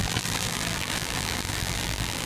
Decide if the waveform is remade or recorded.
remade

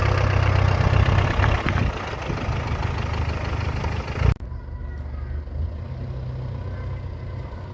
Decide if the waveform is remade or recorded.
recorded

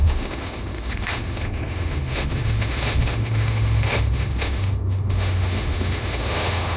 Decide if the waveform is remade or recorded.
remade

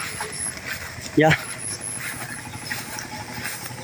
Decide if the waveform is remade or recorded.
recorded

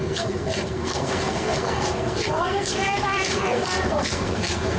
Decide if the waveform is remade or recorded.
remade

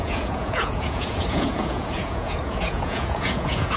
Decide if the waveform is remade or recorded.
remade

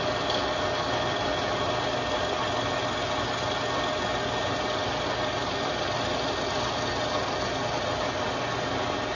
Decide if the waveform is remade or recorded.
recorded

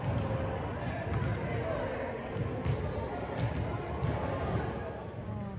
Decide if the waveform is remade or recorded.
recorded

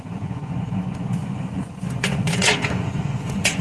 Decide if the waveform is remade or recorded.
remade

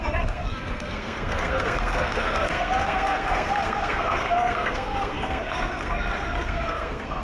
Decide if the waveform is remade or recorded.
remade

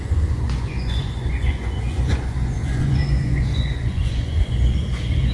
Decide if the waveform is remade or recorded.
remade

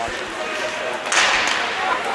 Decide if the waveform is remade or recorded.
recorded